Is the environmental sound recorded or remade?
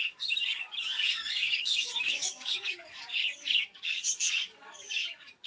remade